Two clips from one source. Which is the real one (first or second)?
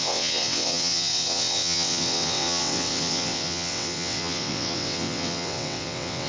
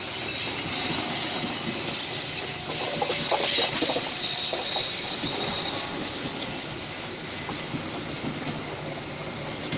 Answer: second